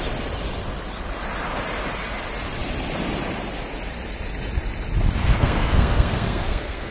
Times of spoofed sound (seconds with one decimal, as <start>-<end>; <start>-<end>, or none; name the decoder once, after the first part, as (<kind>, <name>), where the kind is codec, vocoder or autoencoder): 5.2-6.9 (codec, SNAC)